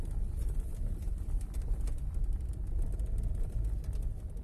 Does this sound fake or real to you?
fake